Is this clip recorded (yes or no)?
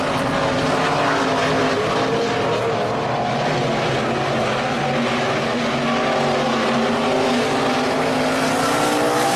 yes